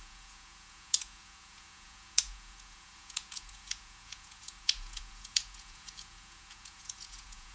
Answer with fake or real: fake